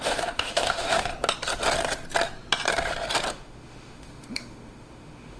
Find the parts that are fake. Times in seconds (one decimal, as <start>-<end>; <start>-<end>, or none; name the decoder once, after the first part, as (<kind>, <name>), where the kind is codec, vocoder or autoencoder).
0.0-1.1 (autoencoder, DAC-VAE); 3.3-5.4